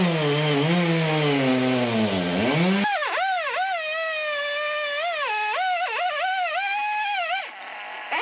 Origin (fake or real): real